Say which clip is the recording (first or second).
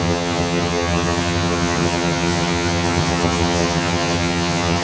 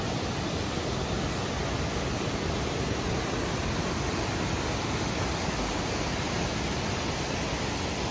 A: second